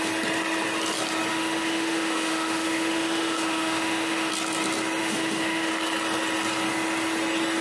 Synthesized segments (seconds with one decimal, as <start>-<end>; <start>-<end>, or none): 1.3-4.3; 5.0-5.7

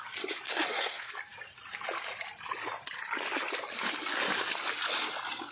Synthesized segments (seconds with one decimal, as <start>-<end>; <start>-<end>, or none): 0.5-1.1

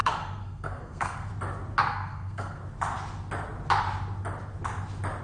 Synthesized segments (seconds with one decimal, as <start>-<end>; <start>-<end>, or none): 0.0-1.3; 1.8-2.6

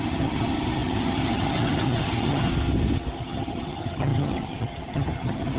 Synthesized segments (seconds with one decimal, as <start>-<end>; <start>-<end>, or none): 0.0-2.5; 3.2-5.6